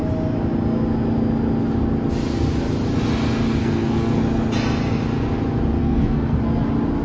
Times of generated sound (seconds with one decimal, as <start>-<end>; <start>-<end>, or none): 3.6-4.2; 5.8-6.4